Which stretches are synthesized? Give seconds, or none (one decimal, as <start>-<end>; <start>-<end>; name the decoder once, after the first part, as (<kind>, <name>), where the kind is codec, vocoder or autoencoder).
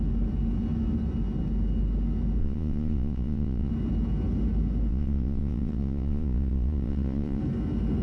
2.4-3.7 (vocoder, Vocos); 4.9-7.4